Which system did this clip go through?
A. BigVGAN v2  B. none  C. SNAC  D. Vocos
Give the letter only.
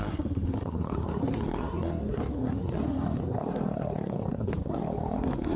C